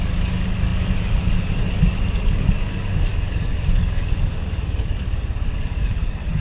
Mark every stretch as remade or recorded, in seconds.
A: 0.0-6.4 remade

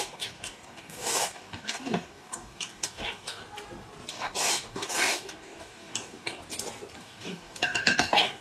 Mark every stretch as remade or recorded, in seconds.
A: 0.0-3.4 remade; 3.4-4.1 recorded; 4.1-6.4 remade; 6.4-7.0 recorded; 7.0-8.4 remade

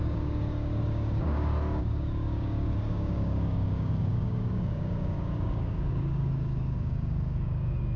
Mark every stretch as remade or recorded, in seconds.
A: 0.0-8.0 remade

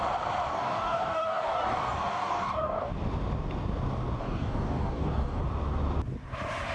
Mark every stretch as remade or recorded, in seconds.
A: 0.0-0.5 recorded; 0.5-2.9 remade; 2.9-4.2 recorded; 4.2-5.4 remade; 5.4-6.7 recorded

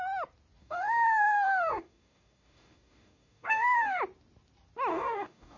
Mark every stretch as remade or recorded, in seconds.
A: 0.0-0.6 recorded; 0.6-4.0 remade; 4.0-4.9 recorded; 4.9-5.6 remade

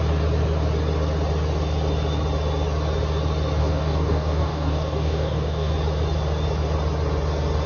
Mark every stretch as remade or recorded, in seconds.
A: 0.0-3.6 recorded; 3.6-5.7 remade; 5.7-7.7 recorded

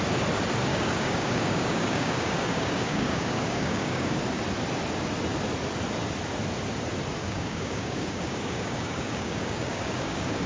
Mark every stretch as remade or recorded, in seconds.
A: 0.0-0.7 recorded; 0.7-4.2 remade; 4.2-7.2 recorded; 7.2-10.5 remade